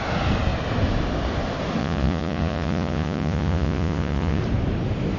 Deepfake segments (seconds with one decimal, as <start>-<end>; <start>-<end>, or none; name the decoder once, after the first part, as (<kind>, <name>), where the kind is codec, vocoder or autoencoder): 1.8-4.4 (vocoder, Vocos)